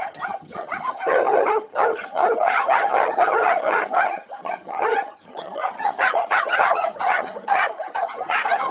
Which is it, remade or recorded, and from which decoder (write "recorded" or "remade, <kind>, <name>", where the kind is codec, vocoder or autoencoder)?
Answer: remade, vocoder, HiFi-GAN